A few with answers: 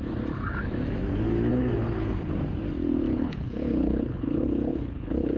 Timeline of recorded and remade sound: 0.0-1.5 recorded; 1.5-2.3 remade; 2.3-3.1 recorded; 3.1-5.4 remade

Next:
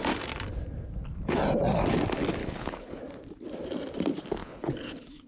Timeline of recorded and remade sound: 0.0-2.4 recorded; 2.4-3.0 remade; 3.0-4.4 recorded; 4.4-5.3 remade

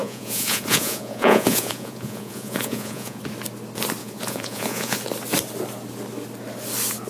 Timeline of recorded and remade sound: 0.0-3.2 remade; 3.2-4.0 recorded; 4.0-5.0 remade; 5.0-7.1 recorded

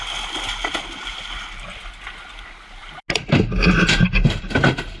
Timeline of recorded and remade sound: 0.0-5.0 recorded

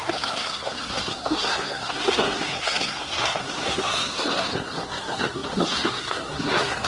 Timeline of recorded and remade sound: 0.0-6.9 remade

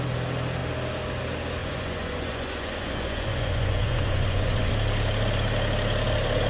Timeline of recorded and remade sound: 0.0-1.6 recorded; 1.6-4.7 remade; 4.7-6.5 recorded

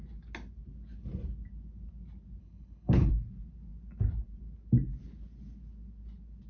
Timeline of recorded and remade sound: 0.0-2.4 recorded; 2.4-3.1 remade; 3.1-6.5 recorded

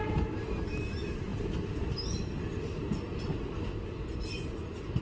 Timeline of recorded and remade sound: 0.0-5.0 recorded